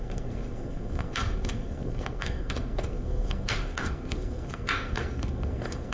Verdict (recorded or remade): remade